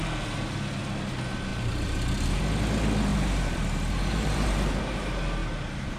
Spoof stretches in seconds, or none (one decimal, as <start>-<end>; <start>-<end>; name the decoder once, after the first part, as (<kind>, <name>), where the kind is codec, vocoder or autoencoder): 1.5-2.4 (vocoder, BigVGAN v2); 3.1-4.8